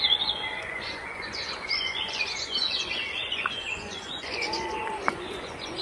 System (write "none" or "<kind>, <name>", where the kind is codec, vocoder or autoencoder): vocoder, Vocos